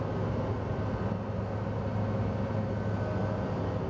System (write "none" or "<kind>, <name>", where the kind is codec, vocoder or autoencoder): none